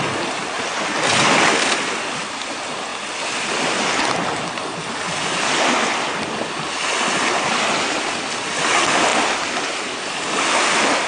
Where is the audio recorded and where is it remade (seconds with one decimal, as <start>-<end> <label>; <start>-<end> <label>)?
0.0-11.1 recorded

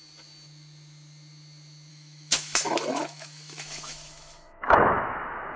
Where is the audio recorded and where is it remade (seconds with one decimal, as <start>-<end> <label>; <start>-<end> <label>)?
0.0-1.9 recorded; 1.9-5.6 remade

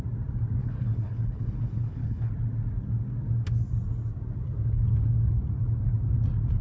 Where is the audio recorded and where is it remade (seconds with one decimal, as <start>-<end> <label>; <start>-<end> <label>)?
0.0-0.6 recorded; 0.6-2.3 remade; 2.3-6.6 recorded

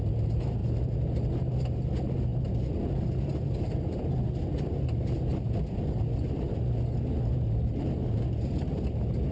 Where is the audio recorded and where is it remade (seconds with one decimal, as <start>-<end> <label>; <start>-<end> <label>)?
0.0-0.6 recorded; 0.6-1.3 remade; 1.3-2.3 recorded; 2.3-4.0 remade; 4.0-5.3 recorded; 5.3-6.6 remade; 6.6-9.3 recorded

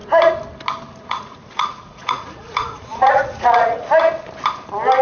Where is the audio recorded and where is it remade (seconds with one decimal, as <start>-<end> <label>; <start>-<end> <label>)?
0.0-1.0 recorded; 1.0-3.9 remade; 3.9-5.0 recorded